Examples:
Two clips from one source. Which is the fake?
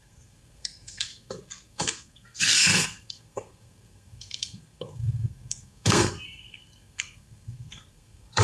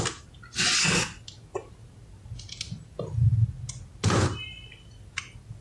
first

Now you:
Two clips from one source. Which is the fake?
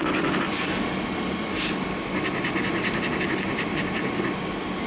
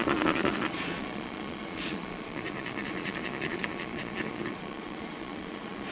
second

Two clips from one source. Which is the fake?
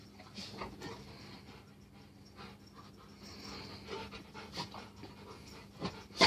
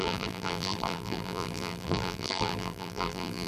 second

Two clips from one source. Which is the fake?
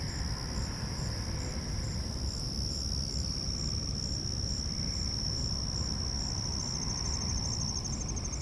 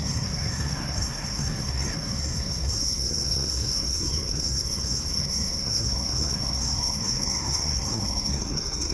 second